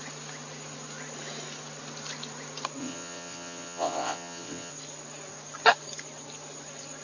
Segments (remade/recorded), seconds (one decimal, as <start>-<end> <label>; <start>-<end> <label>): 0.0-2.8 recorded; 2.8-4.7 remade; 4.7-7.0 recorded